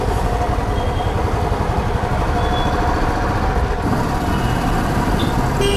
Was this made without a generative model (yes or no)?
yes